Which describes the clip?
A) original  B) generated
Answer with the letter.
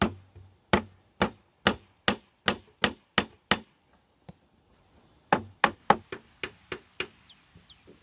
A